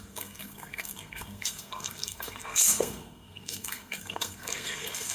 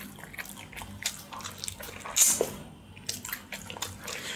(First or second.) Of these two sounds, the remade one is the first